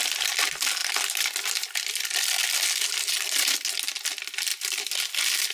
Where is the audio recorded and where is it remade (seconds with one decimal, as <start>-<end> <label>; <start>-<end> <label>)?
0.0-5.5 recorded